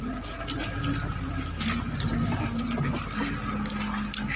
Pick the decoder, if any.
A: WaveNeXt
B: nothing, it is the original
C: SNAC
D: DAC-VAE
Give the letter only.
B